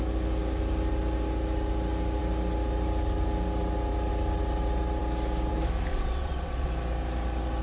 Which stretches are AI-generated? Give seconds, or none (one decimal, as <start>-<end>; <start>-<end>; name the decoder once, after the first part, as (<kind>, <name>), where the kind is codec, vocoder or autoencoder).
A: 5.9-6.7 (vocoder, WaveNeXt)